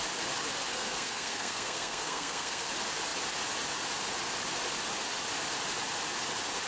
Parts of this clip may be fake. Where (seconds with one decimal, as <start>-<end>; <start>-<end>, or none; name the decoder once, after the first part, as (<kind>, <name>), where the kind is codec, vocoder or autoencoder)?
0.7-2.7 (codec, SNAC)